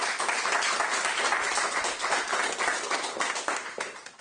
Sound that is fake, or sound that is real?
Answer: real